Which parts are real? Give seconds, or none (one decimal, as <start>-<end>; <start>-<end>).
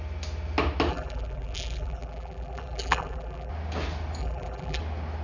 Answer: 0.0-0.9; 3.5-4.2; 4.8-5.2